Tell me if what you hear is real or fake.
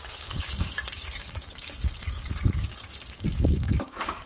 fake